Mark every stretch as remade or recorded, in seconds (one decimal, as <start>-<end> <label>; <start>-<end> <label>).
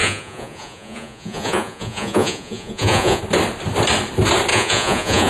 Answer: 0.0-3.2 remade; 3.2-4.5 recorded; 4.5-5.3 remade